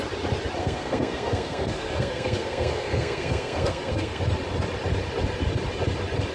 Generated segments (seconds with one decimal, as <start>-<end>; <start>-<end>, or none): 0.6-4.2